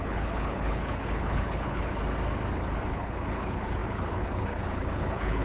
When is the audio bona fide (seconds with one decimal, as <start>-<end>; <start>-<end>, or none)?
1.9-2.9